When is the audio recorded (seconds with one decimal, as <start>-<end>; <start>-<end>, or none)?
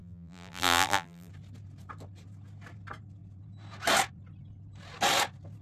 1.3-5.6